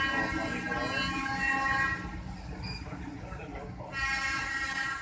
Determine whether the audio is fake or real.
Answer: real